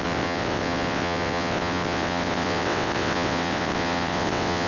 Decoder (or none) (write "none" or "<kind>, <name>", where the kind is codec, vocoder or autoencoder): vocoder, WaveNeXt